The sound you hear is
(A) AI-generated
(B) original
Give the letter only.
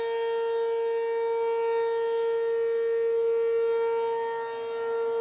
B